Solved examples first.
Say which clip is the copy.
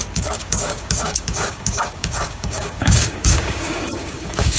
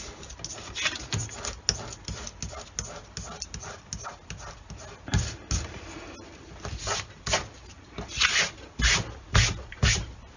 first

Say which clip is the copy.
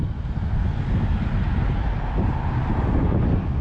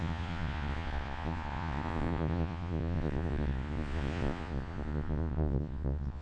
second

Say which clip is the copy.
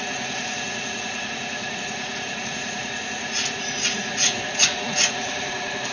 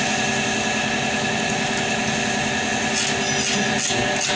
first